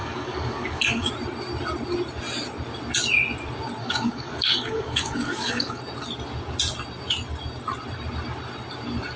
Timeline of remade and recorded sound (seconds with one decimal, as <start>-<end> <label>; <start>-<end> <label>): 0.0-1.1 remade; 1.1-3.8 recorded; 3.8-5.8 remade; 5.8-9.2 recorded